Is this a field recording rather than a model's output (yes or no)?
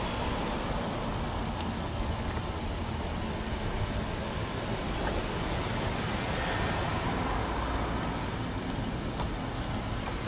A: yes